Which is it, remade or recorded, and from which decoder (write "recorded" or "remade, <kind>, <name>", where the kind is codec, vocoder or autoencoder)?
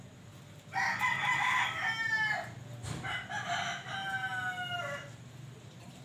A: recorded